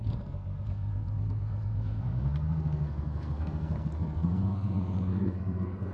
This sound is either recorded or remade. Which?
remade